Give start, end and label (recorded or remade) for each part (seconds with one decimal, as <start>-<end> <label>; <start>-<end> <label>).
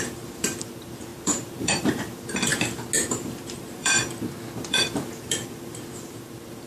0.0-2.5 remade; 2.5-3.1 recorded; 3.1-4.0 remade; 4.0-4.6 recorded; 4.6-6.7 remade